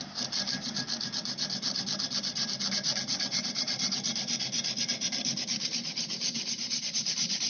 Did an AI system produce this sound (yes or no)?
no